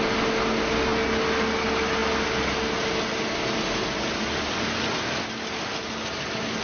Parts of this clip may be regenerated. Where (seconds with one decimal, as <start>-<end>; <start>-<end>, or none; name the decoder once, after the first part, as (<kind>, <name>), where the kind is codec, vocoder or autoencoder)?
none